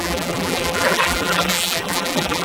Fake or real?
fake